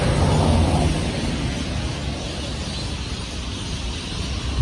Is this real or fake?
real